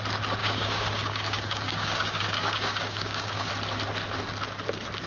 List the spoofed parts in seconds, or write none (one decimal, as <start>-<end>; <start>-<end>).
0.4-3.5

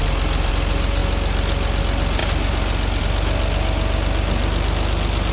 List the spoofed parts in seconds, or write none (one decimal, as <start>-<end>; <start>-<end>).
none

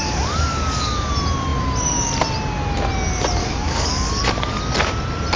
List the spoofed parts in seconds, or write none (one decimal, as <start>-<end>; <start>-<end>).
0.0-1.1; 3.4-4.6

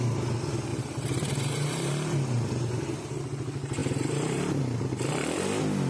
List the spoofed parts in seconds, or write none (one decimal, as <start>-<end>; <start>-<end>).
0.7-3.2; 3.8-4.6

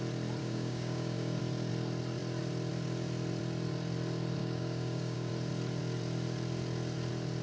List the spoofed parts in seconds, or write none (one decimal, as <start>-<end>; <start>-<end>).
0.4-1.4; 4.4-5.3

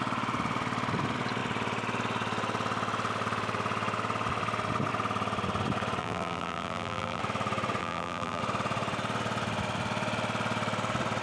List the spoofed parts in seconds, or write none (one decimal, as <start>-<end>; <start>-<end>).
6.0-7.2; 7.8-8.4

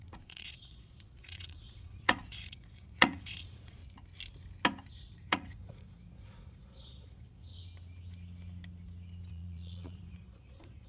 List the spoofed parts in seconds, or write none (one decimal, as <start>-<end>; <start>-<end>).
0.0-3.8; 4.9-7.5; 9.3-10.9